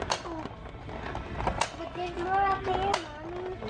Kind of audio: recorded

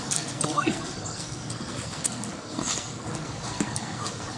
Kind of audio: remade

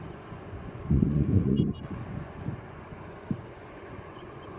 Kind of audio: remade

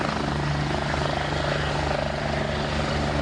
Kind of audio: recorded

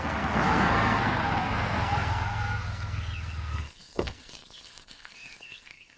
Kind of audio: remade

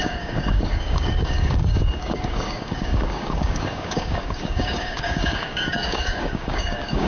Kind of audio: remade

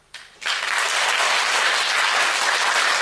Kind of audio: recorded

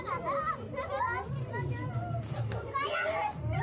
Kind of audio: recorded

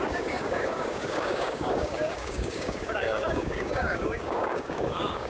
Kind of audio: remade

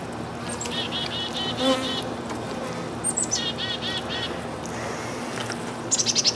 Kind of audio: recorded